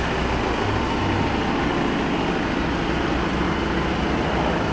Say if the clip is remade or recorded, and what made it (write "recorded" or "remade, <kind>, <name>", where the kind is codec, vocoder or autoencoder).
recorded